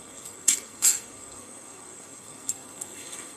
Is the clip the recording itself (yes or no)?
no